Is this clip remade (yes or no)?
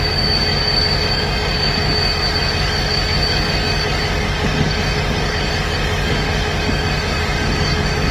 yes